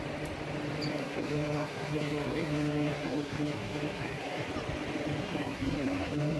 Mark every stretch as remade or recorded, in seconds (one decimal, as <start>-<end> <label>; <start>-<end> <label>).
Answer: 0.0-0.9 recorded; 0.9-4.5 remade; 4.5-5.2 recorded; 5.2-6.4 remade